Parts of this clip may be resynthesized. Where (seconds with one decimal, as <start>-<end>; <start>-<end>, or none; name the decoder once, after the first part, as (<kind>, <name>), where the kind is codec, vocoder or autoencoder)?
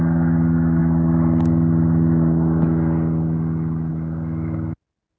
none